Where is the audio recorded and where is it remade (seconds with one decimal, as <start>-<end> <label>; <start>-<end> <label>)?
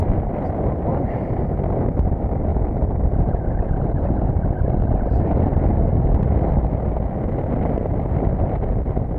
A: 0.0-2.5 recorded; 2.5-4.3 remade; 4.3-9.2 recorded